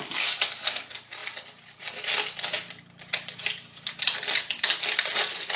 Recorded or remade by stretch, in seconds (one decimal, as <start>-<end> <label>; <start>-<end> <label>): 0.0-5.6 recorded